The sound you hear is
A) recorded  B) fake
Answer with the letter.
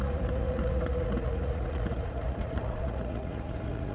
B